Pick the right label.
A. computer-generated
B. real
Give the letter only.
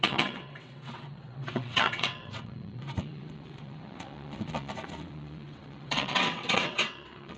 A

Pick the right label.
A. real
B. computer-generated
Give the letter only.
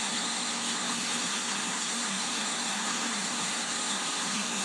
B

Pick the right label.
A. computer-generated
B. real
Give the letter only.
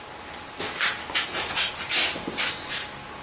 B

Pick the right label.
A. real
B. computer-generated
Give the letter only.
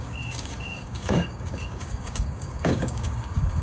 B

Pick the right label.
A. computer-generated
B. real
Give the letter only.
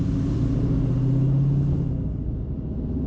B